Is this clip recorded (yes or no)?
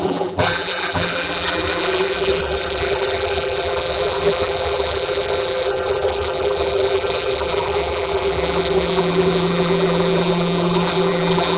no